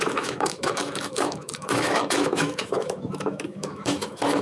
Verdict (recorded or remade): remade